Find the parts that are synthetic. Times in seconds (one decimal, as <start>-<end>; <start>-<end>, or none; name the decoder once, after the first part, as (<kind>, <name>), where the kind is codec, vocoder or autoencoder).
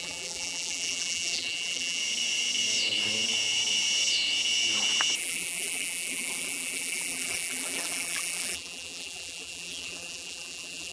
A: 0.0-2.0 (vocoder, BigVGAN v2); 5.2-10.9